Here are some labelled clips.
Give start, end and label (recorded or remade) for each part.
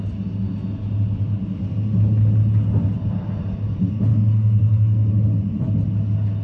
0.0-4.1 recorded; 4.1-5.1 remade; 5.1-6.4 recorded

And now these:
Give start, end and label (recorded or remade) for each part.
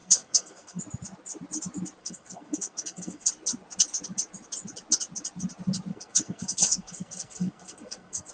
0.0-0.8 remade; 0.8-2.0 recorded; 2.0-3.3 remade; 3.3-5.9 recorded; 5.9-8.3 remade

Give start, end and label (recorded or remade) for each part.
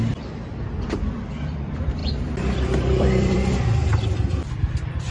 0.0-5.1 remade